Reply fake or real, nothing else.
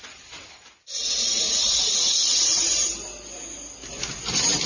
real